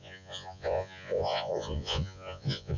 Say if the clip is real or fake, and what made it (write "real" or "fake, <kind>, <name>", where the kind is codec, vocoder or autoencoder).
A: fake, vocoder, Vocos